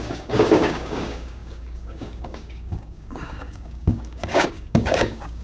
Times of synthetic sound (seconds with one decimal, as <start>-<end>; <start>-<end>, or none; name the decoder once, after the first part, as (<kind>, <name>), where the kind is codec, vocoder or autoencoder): 0.0-5.4 (codec, DAC)